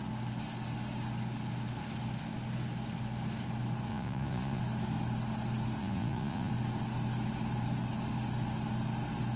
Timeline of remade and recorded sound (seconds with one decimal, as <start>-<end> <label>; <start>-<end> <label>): 0.0-3.9 recorded; 3.9-4.6 remade; 4.6-5.8 recorded; 5.8-6.5 remade; 6.5-9.4 recorded

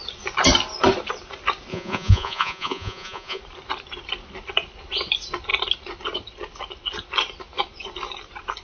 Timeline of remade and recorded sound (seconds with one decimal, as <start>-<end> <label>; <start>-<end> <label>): 0.0-1.7 recorded; 1.7-3.4 remade; 3.4-8.6 recorded

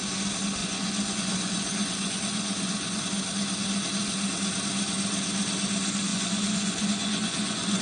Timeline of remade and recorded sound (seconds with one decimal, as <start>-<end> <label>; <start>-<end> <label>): 0.0-0.6 recorded; 0.6-3.0 remade; 3.0-6.1 recorded; 6.1-7.8 remade

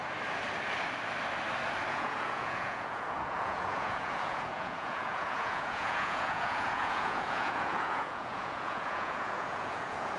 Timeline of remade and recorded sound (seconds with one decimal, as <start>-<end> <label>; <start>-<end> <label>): 0.0-1.9 recorded; 1.9-10.2 remade

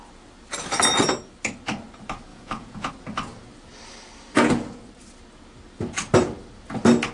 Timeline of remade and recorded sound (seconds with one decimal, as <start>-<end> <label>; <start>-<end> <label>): 0.0-2.3 recorded; 2.3-2.9 remade; 2.9-7.1 recorded

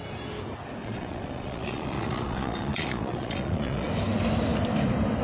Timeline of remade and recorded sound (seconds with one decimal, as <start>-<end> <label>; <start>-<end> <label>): 0.0-0.8 recorded; 0.8-3.9 remade; 3.9-5.2 recorded

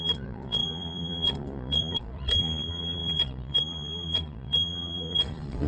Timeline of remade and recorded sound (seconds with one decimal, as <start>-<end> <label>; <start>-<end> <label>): 0.0-5.7 remade

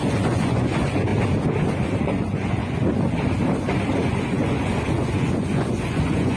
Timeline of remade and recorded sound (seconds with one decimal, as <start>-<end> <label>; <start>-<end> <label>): 0.0-1.1 remade; 1.1-2.0 recorded; 2.0-2.8 remade; 2.8-4.0 recorded; 4.0-6.4 remade